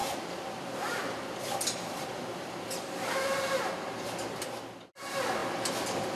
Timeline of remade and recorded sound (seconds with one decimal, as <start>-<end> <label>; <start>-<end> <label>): 0.0-3.7 remade; 3.7-5.4 recorded; 5.4-6.2 remade